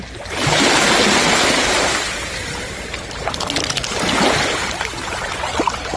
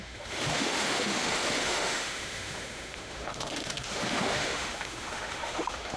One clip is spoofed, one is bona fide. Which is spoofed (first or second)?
second